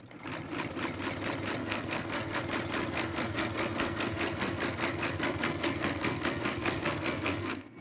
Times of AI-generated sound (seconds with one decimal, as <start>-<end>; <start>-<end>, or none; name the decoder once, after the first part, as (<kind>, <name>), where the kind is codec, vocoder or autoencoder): 1.6-2.4 (codec, SNAC); 2.8-7.8